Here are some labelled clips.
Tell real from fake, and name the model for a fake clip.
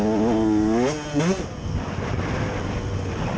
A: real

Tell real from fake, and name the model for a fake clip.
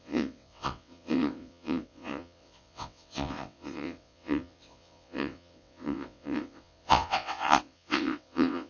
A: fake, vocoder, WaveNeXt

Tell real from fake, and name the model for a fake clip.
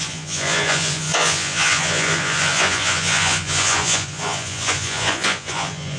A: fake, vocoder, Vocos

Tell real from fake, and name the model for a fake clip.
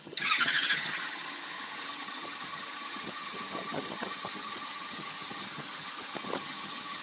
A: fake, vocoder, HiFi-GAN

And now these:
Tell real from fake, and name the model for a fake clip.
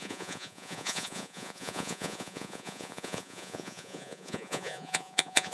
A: fake, vocoder, Vocos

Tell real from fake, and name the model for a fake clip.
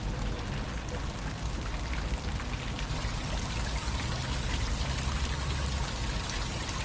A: real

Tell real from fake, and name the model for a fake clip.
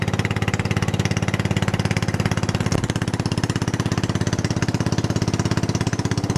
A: real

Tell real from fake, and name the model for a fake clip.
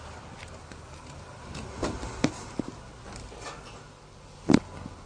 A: real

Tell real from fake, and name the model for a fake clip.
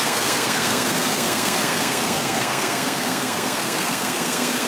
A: fake, codec, SNAC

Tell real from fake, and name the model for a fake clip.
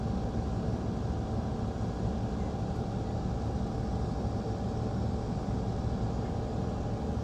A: real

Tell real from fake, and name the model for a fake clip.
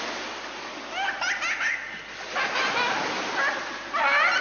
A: real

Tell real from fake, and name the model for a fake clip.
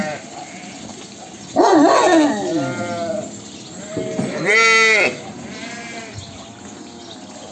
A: real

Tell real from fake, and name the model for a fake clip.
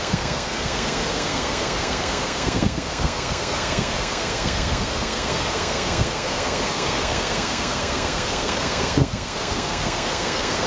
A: fake, codec, SNAC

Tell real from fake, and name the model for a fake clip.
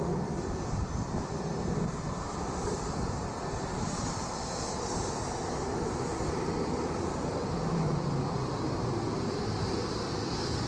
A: fake, vocoder, BigVGAN v2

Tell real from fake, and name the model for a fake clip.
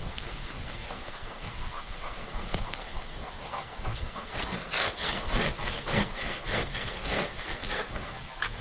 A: fake, codec, SNAC